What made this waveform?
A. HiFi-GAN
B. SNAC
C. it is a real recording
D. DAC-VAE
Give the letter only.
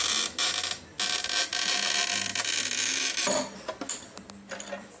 C